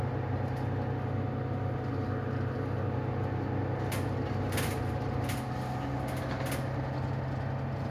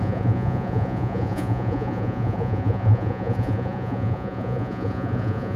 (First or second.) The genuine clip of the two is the first